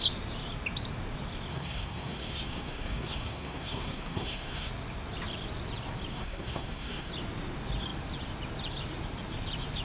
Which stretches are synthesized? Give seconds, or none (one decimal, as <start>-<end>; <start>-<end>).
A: 1.5-4.7; 6.1-7.1